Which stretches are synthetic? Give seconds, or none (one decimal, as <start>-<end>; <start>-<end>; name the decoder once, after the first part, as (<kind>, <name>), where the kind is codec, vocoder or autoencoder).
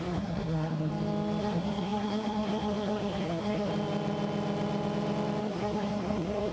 0.0-0.9 (codec, SNAC); 1.4-3.7; 5.4-6.5